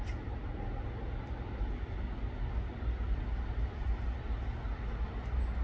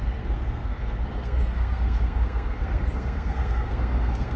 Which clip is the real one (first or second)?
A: first